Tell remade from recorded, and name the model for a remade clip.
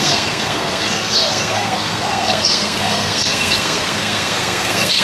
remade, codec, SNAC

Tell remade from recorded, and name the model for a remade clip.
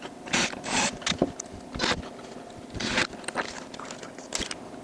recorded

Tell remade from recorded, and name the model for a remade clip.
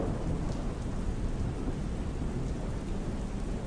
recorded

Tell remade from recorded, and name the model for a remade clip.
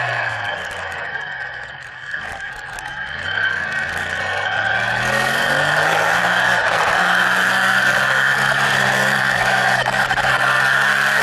remade, codec, SNAC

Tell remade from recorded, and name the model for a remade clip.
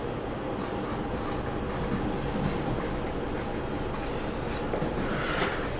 recorded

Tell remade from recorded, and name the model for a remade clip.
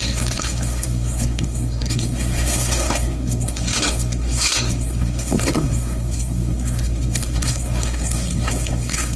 remade, codec, SNAC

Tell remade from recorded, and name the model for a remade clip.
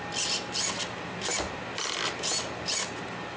recorded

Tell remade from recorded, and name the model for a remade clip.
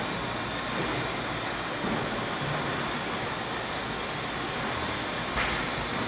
recorded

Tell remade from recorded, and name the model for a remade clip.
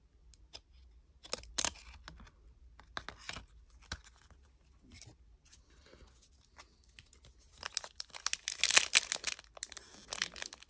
recorded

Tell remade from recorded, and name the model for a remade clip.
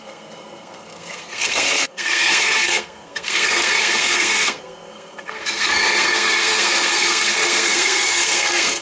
remade, codec, SNAC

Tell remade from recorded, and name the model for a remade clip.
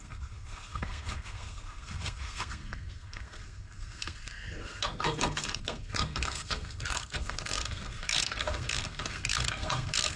remade, codec, SNAC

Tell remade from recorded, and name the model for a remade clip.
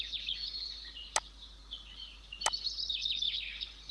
recorded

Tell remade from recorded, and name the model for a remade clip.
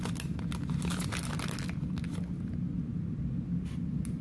recorded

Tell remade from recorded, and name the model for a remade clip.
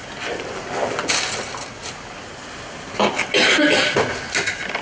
recorded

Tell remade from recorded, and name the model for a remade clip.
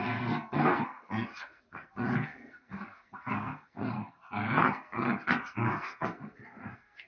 remade, codec, SNAC